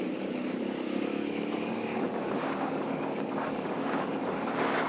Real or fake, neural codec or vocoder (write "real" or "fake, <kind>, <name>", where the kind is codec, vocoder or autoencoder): fake, codec, DAC